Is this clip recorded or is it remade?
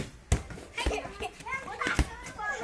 recorded